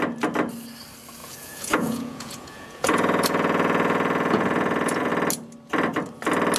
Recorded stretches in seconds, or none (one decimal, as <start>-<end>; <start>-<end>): 0.0-1.2; 5.1-6.6